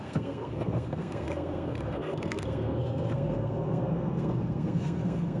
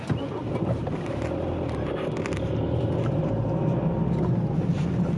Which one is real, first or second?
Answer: second